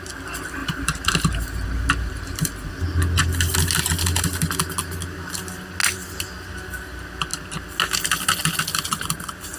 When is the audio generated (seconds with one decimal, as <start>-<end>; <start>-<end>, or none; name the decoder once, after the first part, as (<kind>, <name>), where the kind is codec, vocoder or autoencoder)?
0.6-2.7 (vocoder, BigVGAN v2)